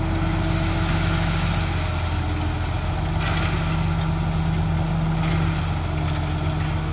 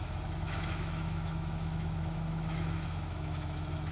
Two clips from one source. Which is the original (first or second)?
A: first